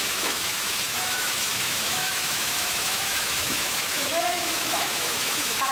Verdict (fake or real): fake